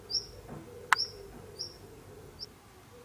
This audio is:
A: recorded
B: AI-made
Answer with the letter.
A